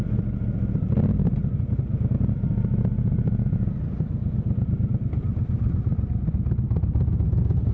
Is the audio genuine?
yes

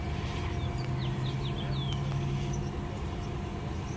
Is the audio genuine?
yes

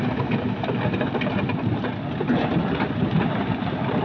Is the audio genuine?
yes